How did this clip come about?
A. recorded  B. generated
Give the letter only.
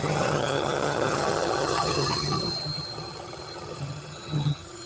B